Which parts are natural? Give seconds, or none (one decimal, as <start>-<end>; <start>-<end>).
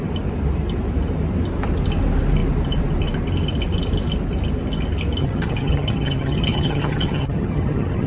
0.0-5.2